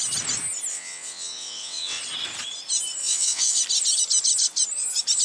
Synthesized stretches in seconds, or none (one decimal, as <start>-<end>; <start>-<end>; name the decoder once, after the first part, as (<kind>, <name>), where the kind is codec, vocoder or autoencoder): 0.7-2.0 (vocoder, WaveNeXt); 3.0-3.6